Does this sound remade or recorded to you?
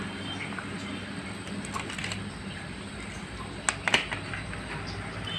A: recorded